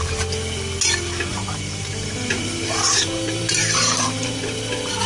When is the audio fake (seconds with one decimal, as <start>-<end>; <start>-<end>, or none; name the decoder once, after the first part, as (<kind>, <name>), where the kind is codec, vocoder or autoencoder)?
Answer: 1.3-4.4 (vocoder, BigVGAN v2)

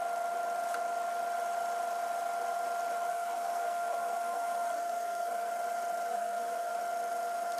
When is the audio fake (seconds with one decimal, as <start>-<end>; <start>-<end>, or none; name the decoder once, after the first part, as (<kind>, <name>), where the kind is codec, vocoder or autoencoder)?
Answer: 3.1-5.5 (codec, SNAC); 6.1-6.8

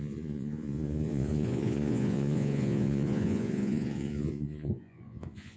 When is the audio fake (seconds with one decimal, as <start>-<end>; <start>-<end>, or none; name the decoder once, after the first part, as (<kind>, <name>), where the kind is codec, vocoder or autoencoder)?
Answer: 0.0-5.6 (vocoder, Vocos)

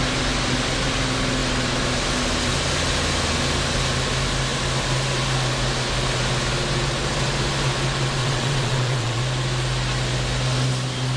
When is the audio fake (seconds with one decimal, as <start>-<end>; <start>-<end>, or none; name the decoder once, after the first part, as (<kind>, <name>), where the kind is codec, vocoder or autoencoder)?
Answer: 8.2-9.2 (vocoder, WaveNeXt)

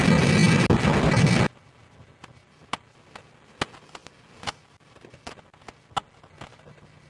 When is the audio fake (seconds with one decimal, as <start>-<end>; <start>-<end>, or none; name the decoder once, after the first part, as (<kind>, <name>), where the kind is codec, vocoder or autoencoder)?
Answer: none

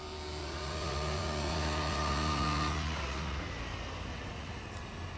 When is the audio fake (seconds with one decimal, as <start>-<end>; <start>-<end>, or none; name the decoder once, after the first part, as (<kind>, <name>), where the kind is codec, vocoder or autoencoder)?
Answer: 0.4-3.5 (vocoder, Vocos); 4.1-4.6

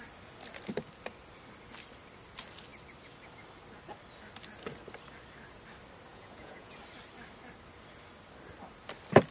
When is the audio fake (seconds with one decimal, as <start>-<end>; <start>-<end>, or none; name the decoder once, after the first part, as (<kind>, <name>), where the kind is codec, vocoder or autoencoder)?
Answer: 6.1-6.8 (vocoder, Vocos)